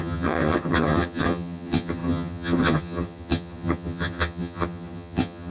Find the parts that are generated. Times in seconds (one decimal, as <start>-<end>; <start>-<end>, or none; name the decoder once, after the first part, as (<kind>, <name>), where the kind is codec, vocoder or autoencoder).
0.0-5.5 (vocoder, HiFi-GAN)

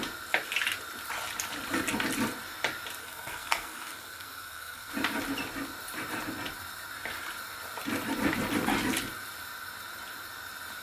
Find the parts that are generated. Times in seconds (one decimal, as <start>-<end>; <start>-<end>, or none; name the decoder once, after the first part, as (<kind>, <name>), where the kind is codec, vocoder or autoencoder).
3.0-4.9 (codec, SNAC)